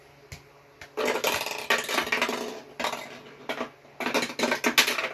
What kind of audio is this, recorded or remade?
recorded